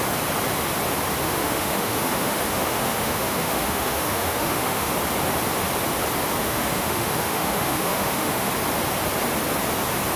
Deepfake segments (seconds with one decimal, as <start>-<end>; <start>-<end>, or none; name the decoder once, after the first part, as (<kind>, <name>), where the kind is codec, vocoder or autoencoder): 1.2-4.9 (autoencoder, DAC-VAE); 6.4-8.5